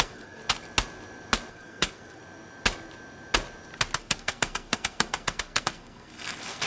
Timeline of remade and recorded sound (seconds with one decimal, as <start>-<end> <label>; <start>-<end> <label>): 0.0-0.4 remade; 0.4-1.5 recorded; 1.5-2.2 remade; 2.2-4.0 recorded; 4.0-6.7 remade